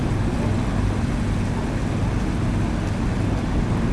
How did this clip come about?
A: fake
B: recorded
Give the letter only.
B